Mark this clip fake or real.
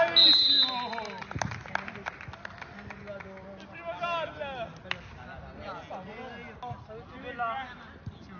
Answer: real